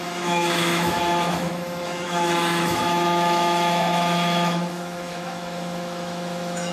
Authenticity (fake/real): fake